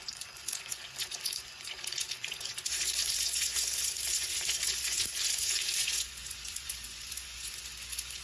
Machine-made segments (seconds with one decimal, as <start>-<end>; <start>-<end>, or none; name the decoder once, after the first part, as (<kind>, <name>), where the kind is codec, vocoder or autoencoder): 0.0-8.2 (vocoder, Vocos)